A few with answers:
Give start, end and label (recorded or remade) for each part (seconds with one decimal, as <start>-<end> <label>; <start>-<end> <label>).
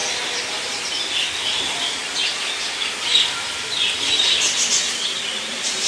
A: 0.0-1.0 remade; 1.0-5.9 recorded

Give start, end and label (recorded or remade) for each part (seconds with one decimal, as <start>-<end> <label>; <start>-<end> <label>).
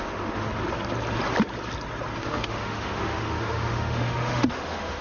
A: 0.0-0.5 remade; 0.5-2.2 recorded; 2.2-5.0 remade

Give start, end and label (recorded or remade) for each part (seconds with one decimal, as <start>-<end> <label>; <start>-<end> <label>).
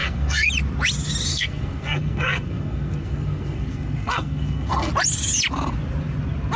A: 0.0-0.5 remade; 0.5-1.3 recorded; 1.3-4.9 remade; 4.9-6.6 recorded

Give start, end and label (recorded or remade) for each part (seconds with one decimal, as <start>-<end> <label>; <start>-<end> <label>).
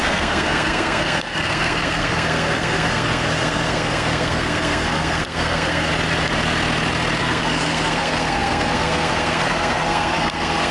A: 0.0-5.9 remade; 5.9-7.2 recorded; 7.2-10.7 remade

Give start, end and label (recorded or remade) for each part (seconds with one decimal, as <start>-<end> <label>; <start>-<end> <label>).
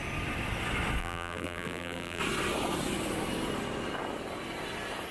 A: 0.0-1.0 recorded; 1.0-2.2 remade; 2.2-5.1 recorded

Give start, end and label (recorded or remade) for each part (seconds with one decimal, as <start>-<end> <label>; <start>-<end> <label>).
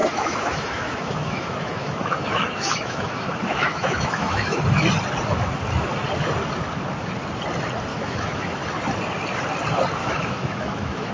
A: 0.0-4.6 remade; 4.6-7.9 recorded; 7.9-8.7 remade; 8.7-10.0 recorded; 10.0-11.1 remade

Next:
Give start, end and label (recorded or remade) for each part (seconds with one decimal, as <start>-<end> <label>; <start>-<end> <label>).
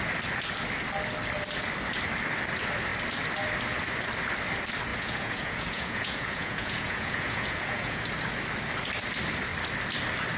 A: 0.0-4.9 recorded; 4.9-8.0 remade; 8.0-10.4 recorded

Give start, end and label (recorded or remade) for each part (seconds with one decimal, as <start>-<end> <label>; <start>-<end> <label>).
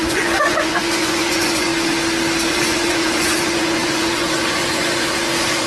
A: 0.0-1.7 remade; 1.7-2.5 recorded; 2.5-5.7 remade